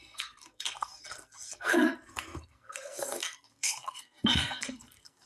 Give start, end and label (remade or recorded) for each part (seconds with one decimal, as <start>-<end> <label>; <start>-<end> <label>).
0.0-5.3 remade